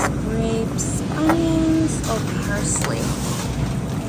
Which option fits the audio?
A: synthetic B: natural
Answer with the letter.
B